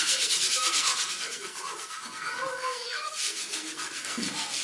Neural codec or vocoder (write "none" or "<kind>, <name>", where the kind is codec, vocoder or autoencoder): codec, SNAC